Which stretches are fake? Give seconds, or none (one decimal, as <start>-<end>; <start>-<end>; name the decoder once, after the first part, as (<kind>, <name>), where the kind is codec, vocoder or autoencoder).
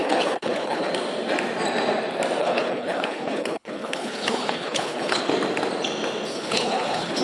0.0-0.9 (codec, HILCodec); 2.4-5.3; 6.3-7.2